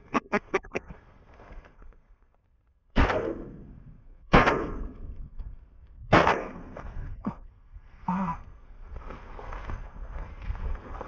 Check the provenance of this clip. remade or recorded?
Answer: remade